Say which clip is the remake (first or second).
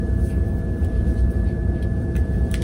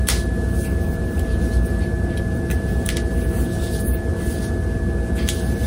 first